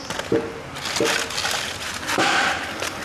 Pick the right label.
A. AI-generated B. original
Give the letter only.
B